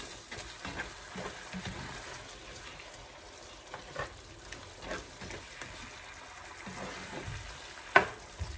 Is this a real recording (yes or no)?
yes